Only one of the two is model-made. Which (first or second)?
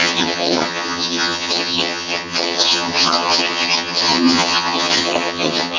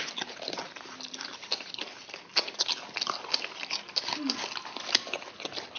first